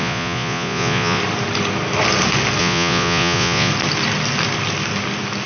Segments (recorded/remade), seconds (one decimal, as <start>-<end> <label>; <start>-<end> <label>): 0.0-1.2 remade; 1.2-2.6 recorded; 2.6-3.7 remade; 3.7-5.5 recorded